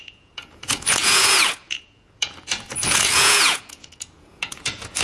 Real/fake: fake